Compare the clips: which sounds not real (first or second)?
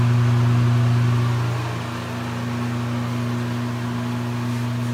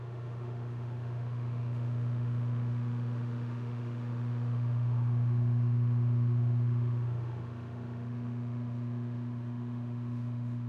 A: second